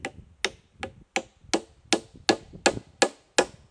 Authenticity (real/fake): real